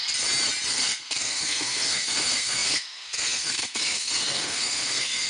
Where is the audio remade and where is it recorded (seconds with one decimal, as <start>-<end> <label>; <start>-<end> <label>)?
0.0-0.7 recorded; 0.7-5.3 remade